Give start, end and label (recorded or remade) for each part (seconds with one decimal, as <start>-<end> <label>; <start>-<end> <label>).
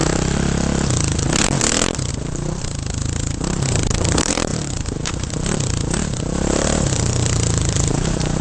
0.0-2.1 recorded; 2.1-8.4 remade